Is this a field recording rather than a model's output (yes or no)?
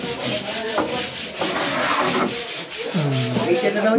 yes